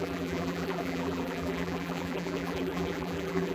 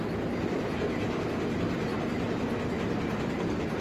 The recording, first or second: second